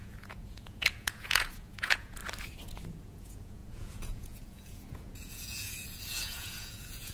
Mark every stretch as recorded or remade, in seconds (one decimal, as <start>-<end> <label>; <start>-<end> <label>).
0.0-2.2 remade; 2.2-2.9 recorded; 2.9-7.1 remade